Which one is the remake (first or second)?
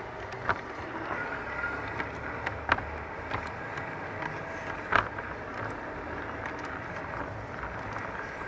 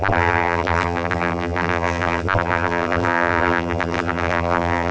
second